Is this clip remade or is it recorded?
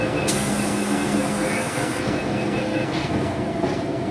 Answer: remade